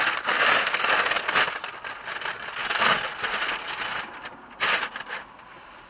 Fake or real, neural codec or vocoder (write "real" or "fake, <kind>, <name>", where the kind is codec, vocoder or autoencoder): real